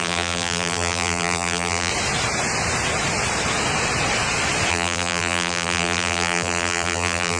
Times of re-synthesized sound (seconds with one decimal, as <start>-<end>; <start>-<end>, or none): 0.0-1.9; 4.7-7.4